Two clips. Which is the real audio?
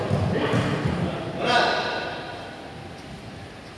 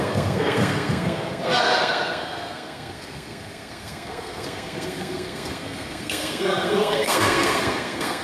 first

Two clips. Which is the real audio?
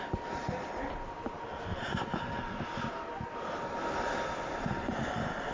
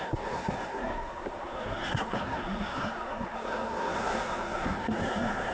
first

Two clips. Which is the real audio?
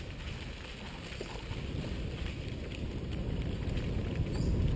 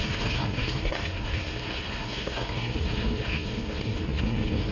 first